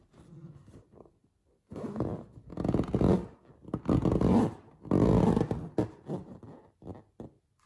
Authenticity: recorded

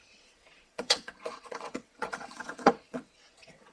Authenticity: remade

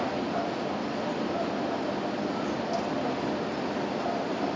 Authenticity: recorded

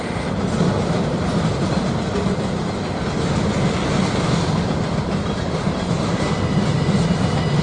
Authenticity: recorded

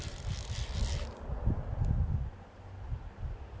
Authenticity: recorded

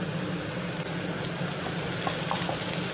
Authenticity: recorded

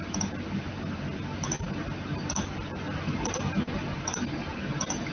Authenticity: recorded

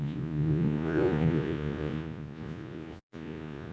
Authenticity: remade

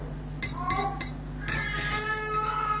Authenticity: recorded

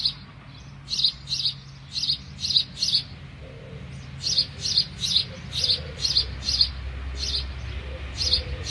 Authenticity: recorded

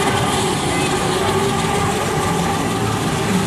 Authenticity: recorded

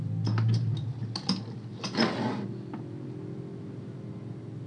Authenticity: recorded